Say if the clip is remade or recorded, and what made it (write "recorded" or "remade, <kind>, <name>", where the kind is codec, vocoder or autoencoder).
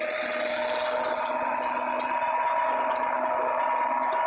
recorded